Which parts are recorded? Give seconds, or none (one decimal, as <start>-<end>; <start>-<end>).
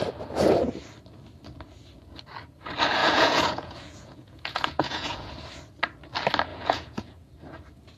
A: 0.0-3.0; 5.3-6.5; 7.3-8.0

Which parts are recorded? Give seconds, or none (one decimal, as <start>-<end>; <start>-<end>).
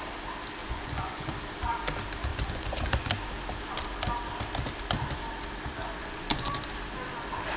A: 0.0-0.6; 1.3-2.3; 3.1-6.0; 6.5-7.6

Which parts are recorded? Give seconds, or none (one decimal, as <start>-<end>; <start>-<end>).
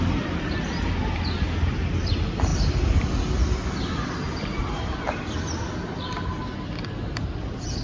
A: 0.0-7.8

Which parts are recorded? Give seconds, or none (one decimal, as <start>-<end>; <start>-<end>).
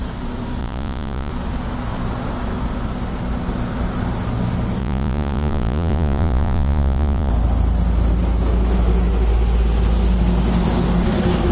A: 0.0-0.6; 1.3-4.8; 7.3-11.5